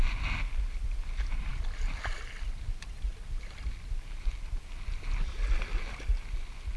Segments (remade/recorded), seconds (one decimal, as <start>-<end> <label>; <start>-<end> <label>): 0.0-3.1 recorded; 3.1-3.9 remade; 3.9-6.8 recorded